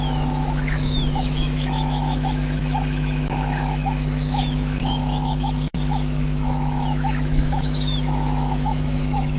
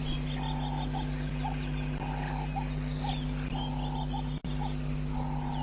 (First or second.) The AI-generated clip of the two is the first